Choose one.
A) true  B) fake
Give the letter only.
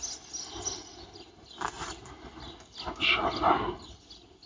A